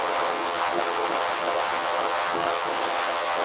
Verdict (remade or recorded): remade